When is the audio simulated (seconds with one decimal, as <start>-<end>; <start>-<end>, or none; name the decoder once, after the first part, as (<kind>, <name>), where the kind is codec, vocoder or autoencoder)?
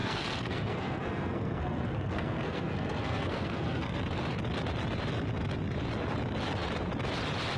0.0-4.0 (codec, SNAC)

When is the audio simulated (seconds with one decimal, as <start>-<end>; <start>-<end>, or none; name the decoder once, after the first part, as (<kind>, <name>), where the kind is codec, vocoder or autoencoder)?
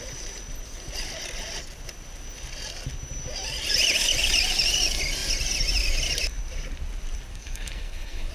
7.3-8.3 (codec, SNAC)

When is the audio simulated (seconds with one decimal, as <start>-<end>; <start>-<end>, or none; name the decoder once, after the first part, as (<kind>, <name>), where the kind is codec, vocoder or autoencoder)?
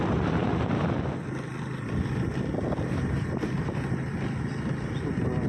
none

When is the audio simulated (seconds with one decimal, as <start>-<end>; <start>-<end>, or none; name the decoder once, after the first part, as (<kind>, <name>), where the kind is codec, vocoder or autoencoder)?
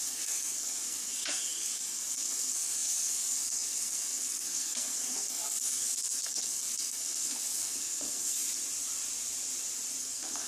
0.0-8.4 (codec, SNAC); 10.0-10.5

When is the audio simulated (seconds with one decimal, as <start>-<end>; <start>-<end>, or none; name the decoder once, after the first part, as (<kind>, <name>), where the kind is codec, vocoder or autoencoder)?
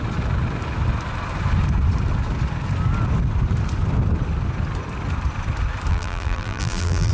5.9-7.1 (vocoder, BigVGAN v2)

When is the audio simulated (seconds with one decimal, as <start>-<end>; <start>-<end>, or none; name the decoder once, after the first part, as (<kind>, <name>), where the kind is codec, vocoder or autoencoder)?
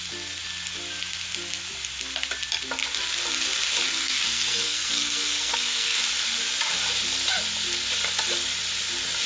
4.0-6.0 (codec, SNAC)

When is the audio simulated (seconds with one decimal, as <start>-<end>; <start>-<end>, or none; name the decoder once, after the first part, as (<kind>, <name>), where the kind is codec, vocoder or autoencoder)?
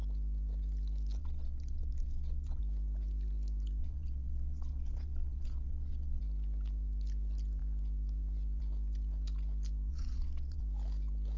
1.2-2.6 (vocoder, WaveNeXt); 3.8-6.2; 9.9-10.6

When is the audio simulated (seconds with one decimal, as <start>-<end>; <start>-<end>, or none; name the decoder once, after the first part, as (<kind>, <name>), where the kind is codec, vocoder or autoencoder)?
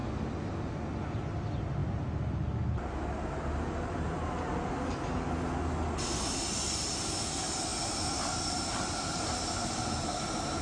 none